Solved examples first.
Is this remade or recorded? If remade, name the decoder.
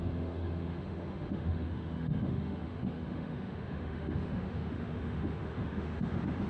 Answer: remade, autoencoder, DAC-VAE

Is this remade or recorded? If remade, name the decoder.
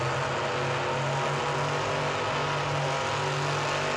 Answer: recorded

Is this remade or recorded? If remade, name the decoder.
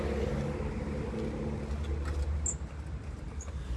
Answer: recorded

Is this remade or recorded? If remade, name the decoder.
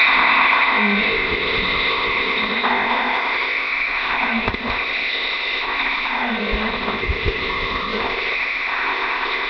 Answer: remade, codec, ZipCodec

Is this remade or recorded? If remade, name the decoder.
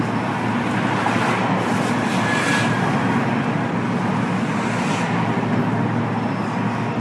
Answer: recorded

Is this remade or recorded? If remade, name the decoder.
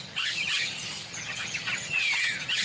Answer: remade, vocoder, HiFi-GAN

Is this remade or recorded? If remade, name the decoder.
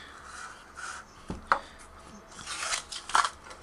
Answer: recorded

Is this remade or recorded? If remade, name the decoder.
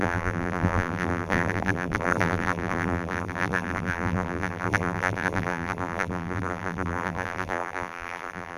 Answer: remade, vocoder, BigVGAN v2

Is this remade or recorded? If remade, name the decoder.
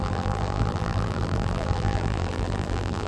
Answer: remade, vocoder, BigVGAN v2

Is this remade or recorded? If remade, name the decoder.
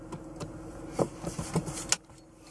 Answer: recorded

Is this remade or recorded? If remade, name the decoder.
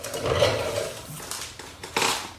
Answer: recorded